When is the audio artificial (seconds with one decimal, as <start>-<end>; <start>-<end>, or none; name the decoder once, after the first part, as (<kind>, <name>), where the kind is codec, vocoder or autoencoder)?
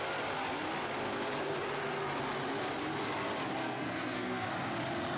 3.6-4.5 (codec, SNAC)